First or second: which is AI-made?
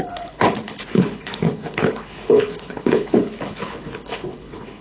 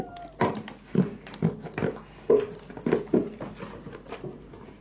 first